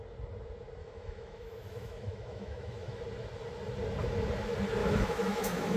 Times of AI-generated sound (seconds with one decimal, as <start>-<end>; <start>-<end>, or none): 0.8-3.0; 4.8-5.8